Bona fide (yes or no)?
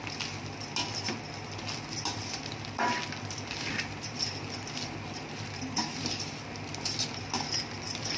yes